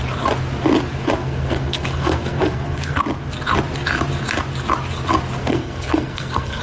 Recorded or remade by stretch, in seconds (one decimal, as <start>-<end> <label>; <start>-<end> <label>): 0.0-1.2 recorded; 1.2-3.0 remade; 3.0-5.4 recorded; 5.4-6.6 remade